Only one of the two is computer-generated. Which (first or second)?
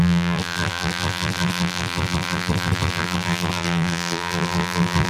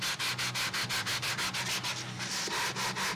first